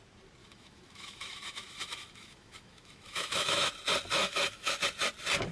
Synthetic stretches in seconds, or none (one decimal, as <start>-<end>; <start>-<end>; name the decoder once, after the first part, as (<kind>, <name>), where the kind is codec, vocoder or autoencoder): 0.4-3.7 (autoencoder, DAC-VAE); 4.2-4.7